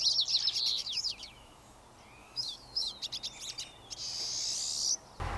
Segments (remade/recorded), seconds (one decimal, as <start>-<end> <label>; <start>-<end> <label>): 0.0-0.7 recorded; 0.7-1.8 remade; 1.8-2.2 recorded; 2.2-2.9 remade; 2.9-5.4 recorded